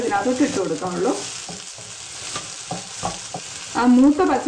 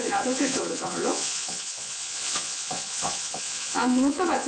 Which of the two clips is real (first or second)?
first